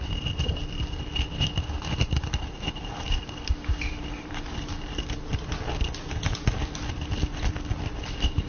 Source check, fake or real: real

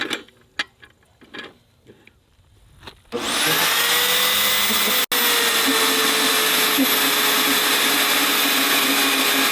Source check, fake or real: real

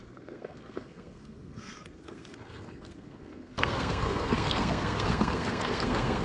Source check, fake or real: fake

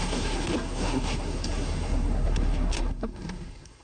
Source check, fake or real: fake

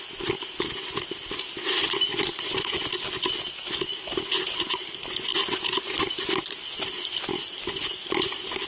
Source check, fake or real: real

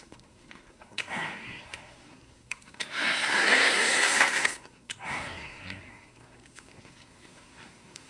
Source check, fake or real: fake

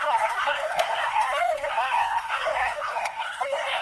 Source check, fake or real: fake